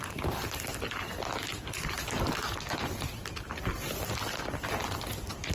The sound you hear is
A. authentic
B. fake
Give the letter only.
A